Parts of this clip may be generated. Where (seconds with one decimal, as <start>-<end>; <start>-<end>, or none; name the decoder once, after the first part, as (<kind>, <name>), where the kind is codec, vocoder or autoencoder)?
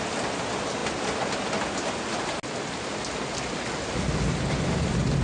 0.0-0.8 (vocoder, BigVGAN v2); 3.9-5.2